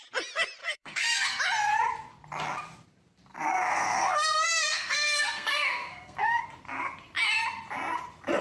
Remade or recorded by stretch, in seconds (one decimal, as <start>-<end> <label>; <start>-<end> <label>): 0.0-0.6 recorded; 0.6-1.4 remade; 1.4-3.3 recorded; 3.3-6.4 remade; 6.4-8.4 recorded